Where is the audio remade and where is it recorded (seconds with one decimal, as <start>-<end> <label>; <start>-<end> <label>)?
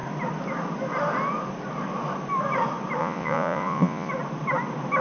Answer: 0.0-3.0 recorded; 3.0-4.1 remade; 4.1-5.0 recorded